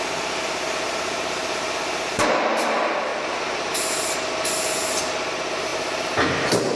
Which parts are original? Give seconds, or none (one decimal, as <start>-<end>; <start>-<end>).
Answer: 3.1-4.3; 5.7-6.8